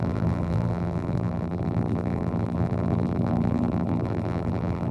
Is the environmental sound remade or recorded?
remade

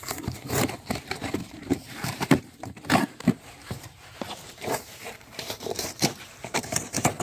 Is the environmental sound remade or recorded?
remade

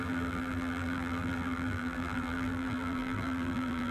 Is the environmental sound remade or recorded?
remade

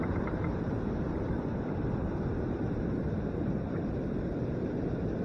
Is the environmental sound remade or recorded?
remade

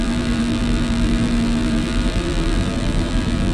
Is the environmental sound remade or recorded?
remade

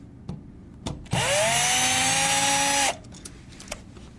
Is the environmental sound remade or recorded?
recorded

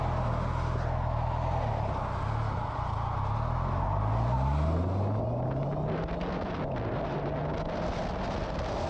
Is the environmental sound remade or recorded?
recorded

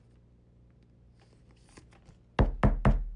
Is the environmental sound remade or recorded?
recorded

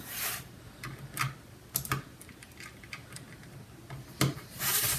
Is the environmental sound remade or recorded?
recorded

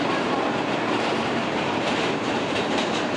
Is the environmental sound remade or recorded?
remade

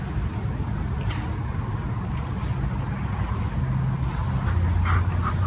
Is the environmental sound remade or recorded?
recorded